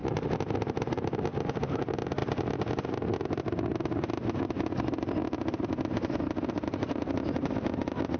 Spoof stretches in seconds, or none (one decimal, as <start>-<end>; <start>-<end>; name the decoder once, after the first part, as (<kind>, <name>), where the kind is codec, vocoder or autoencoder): none